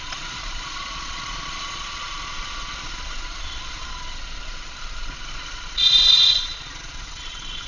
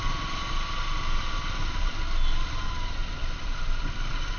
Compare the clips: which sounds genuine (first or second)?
second